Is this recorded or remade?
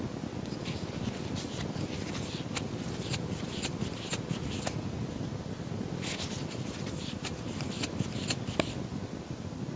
recorded